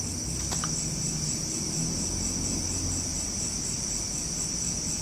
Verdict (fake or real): real